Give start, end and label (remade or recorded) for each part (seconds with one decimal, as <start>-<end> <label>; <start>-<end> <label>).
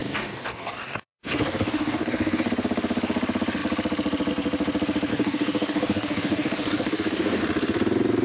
0.0-2.5 remade; 2.5-5.1 recorded; 5.1-7.4 remade; 7.4-8.2 recorded